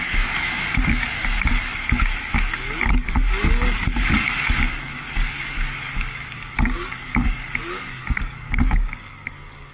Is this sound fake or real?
fake